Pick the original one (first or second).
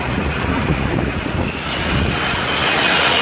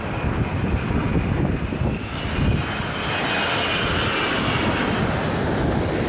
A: second